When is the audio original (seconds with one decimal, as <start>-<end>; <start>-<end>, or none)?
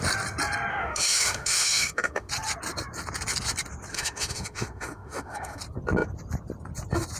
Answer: 0.0-0.7; 2.3-3.9; 5.6-7.2